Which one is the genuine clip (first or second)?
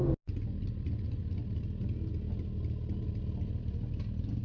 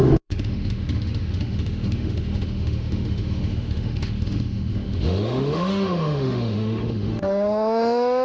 first